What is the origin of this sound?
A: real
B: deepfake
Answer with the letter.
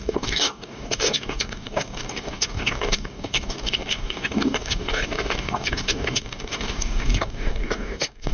B